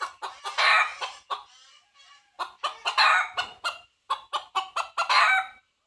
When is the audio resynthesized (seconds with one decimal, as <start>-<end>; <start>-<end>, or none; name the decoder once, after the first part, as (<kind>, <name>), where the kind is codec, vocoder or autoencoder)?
none